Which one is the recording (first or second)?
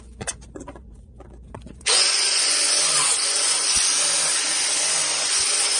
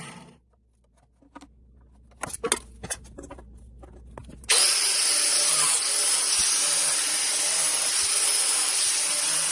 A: second